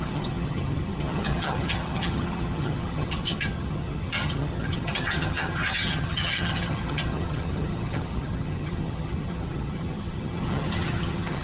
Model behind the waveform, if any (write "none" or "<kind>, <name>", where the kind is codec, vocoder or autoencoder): vocoder, HiFi-GAN